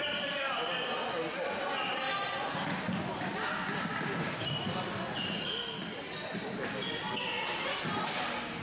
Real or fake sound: real